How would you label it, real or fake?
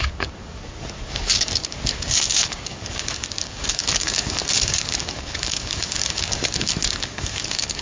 fake